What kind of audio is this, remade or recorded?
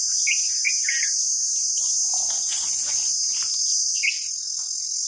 recorded